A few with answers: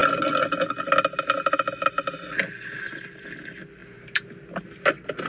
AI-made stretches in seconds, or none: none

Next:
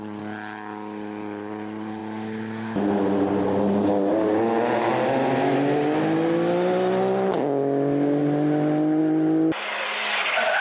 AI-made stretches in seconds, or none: none

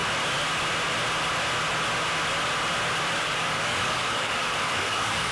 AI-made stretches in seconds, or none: 3.2-5.3 (codec, DAC)

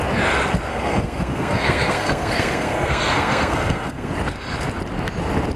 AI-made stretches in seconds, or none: 0.7-4.1 (codec, SNAC)